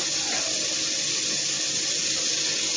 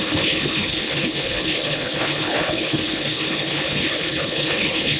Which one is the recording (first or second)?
first